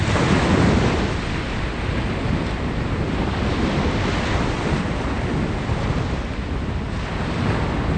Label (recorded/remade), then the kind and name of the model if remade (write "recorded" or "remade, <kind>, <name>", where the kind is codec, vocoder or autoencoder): recorded